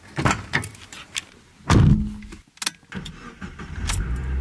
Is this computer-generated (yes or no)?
no